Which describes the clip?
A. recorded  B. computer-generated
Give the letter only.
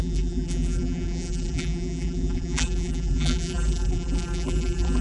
B